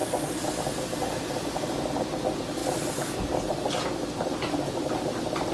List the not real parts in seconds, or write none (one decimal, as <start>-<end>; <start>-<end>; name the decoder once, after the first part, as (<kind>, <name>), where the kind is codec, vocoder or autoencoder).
none